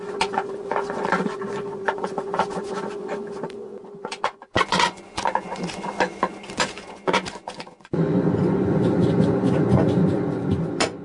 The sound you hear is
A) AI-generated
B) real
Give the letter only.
A